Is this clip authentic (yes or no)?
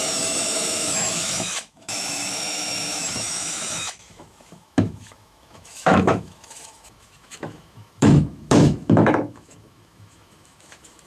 no